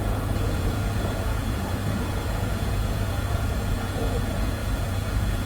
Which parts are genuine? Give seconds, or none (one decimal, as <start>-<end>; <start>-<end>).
none